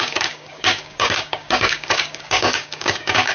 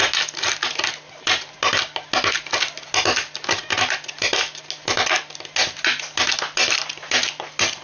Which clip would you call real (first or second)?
second